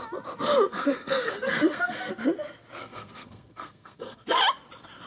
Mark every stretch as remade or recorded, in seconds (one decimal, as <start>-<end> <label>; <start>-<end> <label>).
0.0-0.7 recorded; 0.7-2.1 remade; 2.1-2.8 recorded; 2.8-4.4 remade; 4.4-5.1 recorded